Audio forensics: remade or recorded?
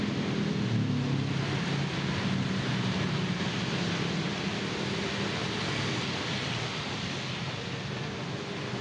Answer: recorded